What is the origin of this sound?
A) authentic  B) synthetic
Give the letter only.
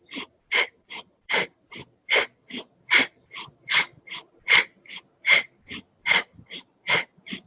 B